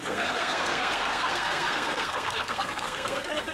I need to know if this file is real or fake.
fake